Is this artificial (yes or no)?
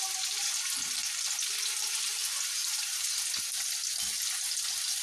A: no